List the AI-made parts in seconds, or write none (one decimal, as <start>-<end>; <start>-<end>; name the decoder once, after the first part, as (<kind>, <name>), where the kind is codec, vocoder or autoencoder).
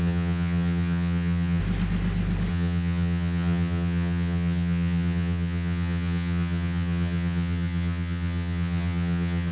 0.0-1.6 (vocoder, HiFi-GAN); 2.5-9.5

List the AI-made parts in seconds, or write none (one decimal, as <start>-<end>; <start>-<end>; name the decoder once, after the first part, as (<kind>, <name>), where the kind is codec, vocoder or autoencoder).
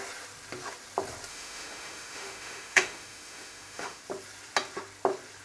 1.3-4.0 (autoencoder, DAC-VAE)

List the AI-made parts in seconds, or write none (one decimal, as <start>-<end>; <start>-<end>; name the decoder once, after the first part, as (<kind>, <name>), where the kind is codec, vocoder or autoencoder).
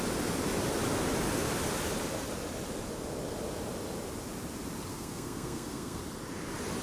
4.9-6.0 (codec, SNAC)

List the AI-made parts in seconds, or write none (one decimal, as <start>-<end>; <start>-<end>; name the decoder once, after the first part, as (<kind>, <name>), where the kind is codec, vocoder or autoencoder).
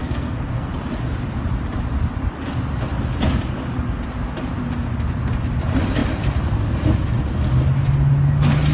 0.0-0.7 (codec, SNAC)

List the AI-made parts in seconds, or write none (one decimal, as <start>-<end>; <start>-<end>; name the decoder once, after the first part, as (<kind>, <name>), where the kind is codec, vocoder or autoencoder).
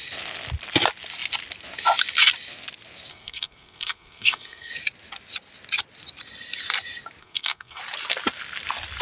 3.1-4.7 (codec, SNAC); 7.2-7.8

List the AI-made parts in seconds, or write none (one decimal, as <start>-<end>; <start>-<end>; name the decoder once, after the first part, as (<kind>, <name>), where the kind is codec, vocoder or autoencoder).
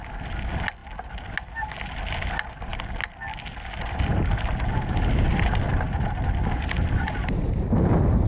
none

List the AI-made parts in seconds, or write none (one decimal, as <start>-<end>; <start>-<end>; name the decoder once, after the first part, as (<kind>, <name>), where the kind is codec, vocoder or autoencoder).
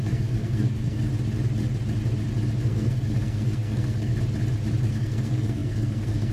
0.0-1.1 (codec, SNAC); 2.6-4.1; 4.9-6.3